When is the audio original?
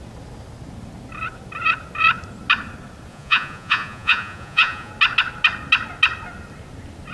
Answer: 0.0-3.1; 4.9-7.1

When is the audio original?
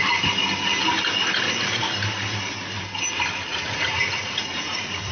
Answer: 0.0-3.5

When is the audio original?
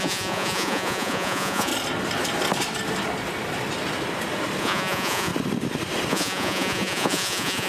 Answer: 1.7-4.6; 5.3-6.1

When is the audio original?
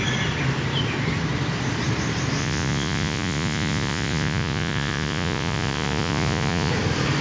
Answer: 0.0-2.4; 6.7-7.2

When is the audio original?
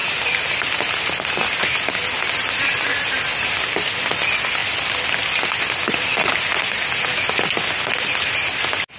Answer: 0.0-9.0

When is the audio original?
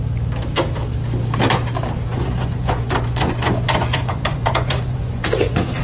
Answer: 0.0-2.1